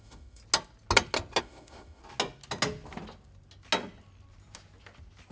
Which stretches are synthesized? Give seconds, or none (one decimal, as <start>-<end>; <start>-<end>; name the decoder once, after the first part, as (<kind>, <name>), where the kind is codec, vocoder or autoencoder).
0.0-0.4 (autoencoder, DAC-VAE); 1.4-2.0